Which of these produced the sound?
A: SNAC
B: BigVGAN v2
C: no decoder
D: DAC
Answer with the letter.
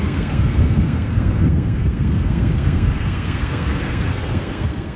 A